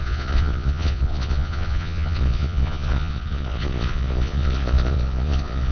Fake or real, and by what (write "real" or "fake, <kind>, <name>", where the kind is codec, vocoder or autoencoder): fake, vocoder, Vocos